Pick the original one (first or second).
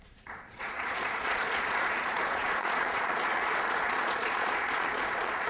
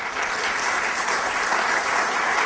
second